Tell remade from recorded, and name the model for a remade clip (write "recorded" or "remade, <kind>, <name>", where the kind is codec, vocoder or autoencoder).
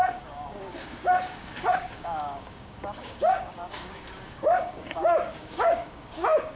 remade, codec, DAC